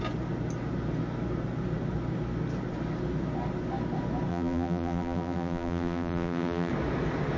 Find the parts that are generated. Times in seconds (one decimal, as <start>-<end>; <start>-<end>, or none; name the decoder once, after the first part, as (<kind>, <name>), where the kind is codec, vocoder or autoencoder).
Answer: 4.3-6.7 (vocoder, BigVGAN v2)